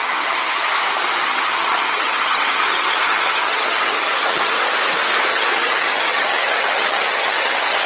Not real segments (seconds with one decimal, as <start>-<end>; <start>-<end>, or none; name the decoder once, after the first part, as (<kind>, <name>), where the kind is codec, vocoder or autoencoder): 0.0-0.7 (vocoder, HiFi-GAN); 1.2-4.6; 5.3-7.9